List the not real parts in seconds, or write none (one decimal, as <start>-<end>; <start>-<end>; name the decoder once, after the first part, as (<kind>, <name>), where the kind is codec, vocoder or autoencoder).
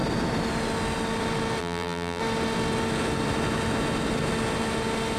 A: 1.6-2.2 (vocoder, BigVGAN v2)